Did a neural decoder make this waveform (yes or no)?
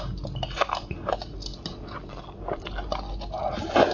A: no